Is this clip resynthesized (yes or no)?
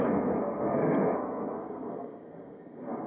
yes